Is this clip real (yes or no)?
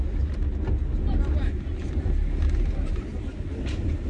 yes